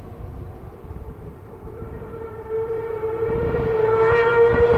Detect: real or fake fake